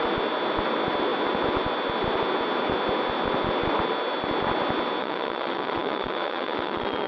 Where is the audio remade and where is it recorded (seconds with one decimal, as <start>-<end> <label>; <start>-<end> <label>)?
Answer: 0.0-5.0 recorded; 5.0-7.1 remade